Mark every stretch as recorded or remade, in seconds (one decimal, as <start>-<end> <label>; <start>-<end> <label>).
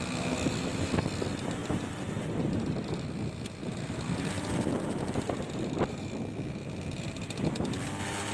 0.0-8.3 recorded